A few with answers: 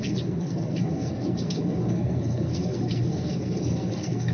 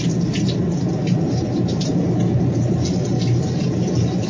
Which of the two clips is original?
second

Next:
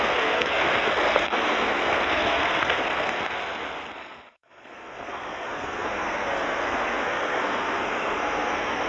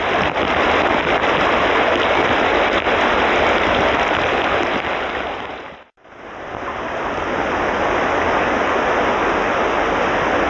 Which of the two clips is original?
second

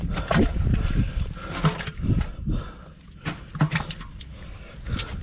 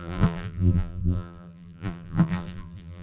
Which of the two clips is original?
first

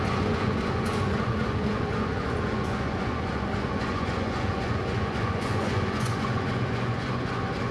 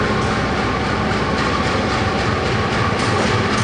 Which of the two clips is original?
second